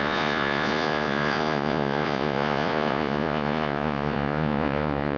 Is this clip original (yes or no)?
no